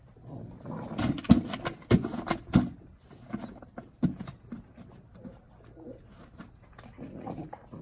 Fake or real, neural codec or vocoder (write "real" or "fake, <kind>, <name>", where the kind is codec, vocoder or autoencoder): real